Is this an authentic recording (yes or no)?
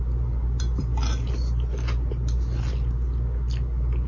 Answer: yes